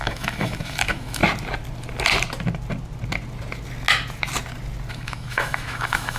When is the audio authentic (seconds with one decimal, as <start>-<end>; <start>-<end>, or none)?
1.2-4.9